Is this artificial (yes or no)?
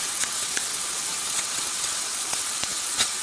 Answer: yes